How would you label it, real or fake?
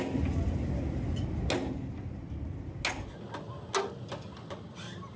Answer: real